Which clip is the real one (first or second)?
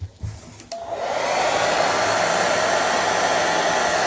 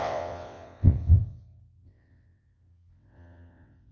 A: first